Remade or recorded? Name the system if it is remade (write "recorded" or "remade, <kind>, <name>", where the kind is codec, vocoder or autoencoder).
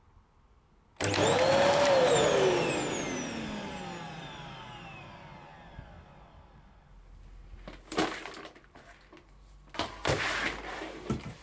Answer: recorded